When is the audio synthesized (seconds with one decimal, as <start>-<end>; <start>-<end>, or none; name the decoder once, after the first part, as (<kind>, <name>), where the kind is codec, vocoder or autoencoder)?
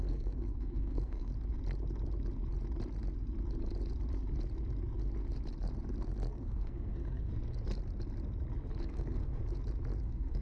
0.0-1.3 (codec, SNAC); 6.3-7.3; 8.8-9.4; 10.0-10.4